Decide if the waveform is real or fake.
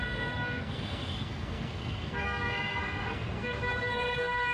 fake